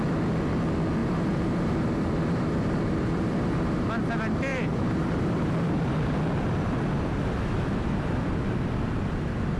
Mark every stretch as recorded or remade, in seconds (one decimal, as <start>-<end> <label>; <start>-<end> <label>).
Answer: 0.0-1.0 recorded; 1.0-3.9 remade; 3.9-4.5 recorded; 4.5-5.8 remade; 5.8-9.6 recorded